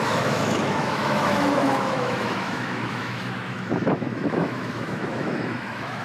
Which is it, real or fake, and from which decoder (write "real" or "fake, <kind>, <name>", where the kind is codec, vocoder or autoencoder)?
fake, autoencoder, DAC-VAE